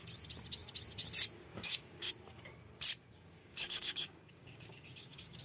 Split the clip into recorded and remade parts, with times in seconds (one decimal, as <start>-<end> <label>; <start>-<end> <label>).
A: 0.0-1.5 recorded; 1.5-2.1 remade; 2.1-3.4 recorded; 3.4-5.4 remade